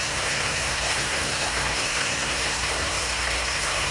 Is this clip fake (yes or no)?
yes